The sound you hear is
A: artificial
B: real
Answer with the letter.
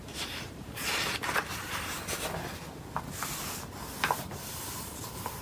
B